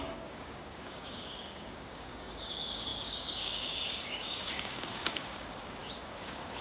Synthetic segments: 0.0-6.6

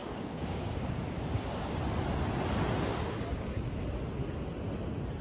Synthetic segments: 0.0-1.8; 2.9-3.9

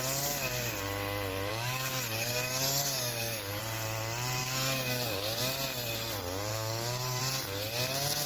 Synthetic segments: 1.5-3.6; 4.4-5.4; 6.5-7.2

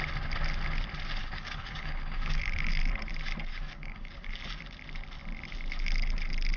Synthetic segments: 1.2-2.4; 3.5-4.3

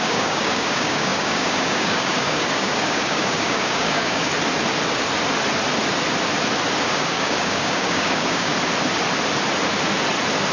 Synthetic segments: 0.0-4.3; 6.8-8.5

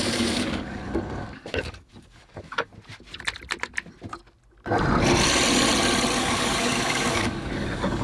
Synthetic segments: 0.0-2.7; 6.2-8.0